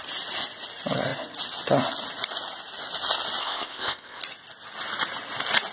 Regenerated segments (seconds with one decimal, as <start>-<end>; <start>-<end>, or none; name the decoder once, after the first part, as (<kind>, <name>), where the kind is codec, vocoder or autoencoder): 3.4-4.2 (codec, ZipCodec)